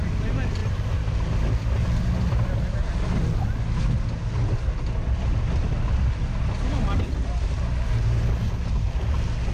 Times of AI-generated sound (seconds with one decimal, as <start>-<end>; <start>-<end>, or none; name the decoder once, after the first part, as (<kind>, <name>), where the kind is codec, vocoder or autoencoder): none

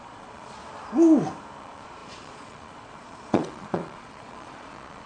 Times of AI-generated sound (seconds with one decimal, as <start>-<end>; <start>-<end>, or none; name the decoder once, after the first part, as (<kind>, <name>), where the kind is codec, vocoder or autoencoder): 0.0-0.6 (vocoder, Vocos); 1.6-5.1

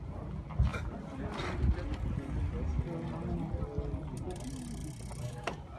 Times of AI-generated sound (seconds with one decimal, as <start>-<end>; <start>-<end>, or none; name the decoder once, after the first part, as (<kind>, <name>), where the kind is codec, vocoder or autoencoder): none

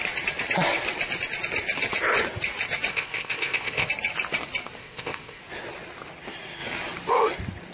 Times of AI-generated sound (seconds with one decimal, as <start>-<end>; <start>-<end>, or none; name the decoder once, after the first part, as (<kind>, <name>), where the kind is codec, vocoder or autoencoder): 2.9-3.9 (codec, ZipCodec); 4.8-5.4

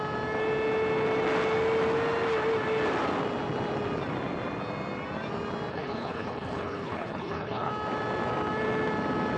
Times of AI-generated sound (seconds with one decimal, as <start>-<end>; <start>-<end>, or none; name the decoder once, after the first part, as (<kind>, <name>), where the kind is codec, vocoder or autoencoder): 5.7-7.7 (codec, HILCodec)